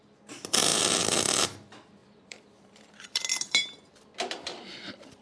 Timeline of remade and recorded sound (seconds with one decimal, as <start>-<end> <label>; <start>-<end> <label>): 0.0-2.0 recorded; 2.0-5.2 remade

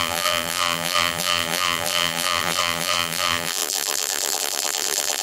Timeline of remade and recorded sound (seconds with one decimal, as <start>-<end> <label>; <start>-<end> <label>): 0.0-5.2 remade

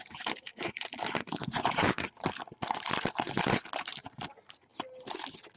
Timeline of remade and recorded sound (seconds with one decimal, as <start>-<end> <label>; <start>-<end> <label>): 0.0-4.7 remade; 4.7-5.6 recorded

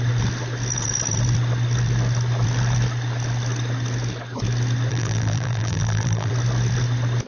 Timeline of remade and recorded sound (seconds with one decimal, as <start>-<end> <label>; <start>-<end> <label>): 0.0-4.9 recorded; 4.9-6.3 remade; 6.3-7.3 recorded

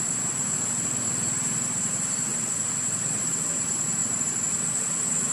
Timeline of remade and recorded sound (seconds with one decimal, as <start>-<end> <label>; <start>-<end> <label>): 0.0-2.3 remade; 2.3-3.0 recorded; 3.0-4.0 remade; 4.0-4.5 recorded; 4.5-5.3 remade

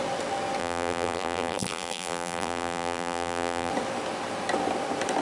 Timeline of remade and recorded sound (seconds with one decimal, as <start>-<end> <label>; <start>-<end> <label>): 0.0-0.6 recorded; 0.6-3.7 remade; 3.7-5.2 recorded

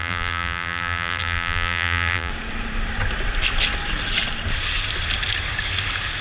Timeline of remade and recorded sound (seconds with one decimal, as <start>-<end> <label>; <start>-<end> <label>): 0.0-2.3 remade; 2.3-6.2 recorded

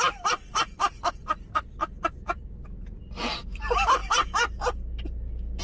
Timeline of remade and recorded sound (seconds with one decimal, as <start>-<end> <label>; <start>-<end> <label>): 0.0-5.6 recorded